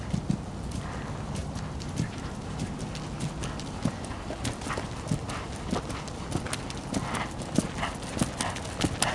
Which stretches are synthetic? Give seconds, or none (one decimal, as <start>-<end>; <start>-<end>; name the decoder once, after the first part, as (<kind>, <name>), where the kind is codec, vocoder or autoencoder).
1.4-2.9 (vocoder, BigVGAN v2)